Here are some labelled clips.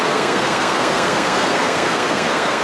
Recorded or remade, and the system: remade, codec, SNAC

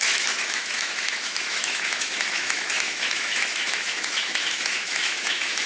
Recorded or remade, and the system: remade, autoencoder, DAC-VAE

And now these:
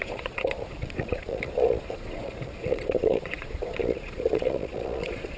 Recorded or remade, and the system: remade, vocoder, Vocos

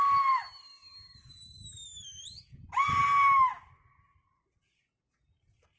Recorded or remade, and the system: recorded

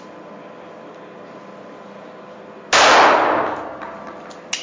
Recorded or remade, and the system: recorded